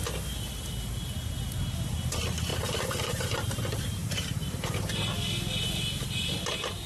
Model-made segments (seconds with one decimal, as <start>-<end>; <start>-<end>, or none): 2.5-3.3; 4.0-4.9